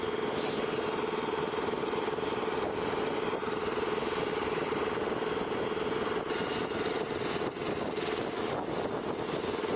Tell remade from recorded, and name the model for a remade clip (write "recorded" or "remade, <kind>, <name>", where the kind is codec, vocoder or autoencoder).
recorded